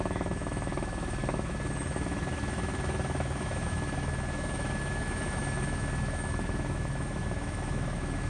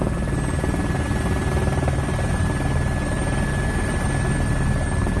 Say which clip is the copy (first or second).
first